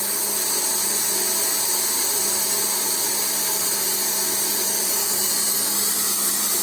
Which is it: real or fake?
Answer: fake